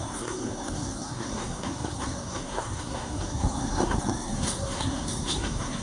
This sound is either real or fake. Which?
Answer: fake